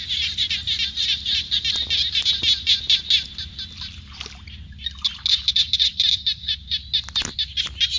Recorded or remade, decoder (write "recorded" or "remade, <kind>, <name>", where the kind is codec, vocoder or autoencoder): recorded